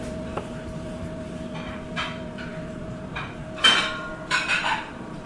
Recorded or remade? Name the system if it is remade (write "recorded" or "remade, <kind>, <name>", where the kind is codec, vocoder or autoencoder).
remade, vocoder, BigVGAN v2